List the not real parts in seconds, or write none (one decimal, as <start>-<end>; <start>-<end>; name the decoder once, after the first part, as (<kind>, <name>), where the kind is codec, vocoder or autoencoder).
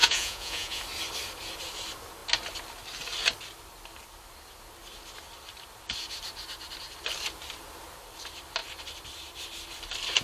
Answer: 0.0-0.8 (vocoder, Vocos)